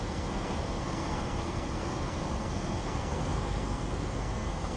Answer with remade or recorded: remade